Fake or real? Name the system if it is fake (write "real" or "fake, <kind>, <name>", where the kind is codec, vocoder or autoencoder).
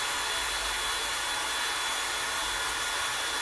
real